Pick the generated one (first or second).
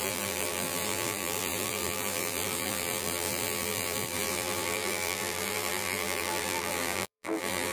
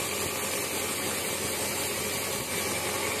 first